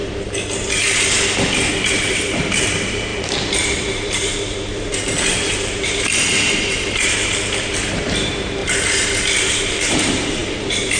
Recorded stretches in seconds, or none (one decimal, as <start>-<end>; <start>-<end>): 0.0-1.7; 8.6-9.4